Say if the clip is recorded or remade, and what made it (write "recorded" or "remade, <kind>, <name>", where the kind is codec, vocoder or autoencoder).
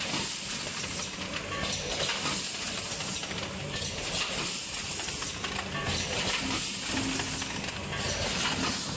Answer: recorded